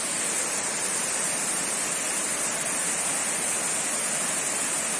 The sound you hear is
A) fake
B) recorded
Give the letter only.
B